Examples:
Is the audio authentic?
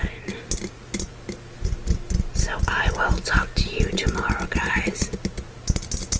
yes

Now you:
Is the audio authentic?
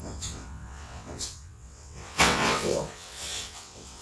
no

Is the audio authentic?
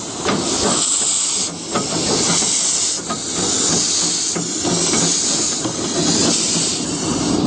yes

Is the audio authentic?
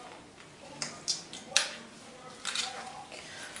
yes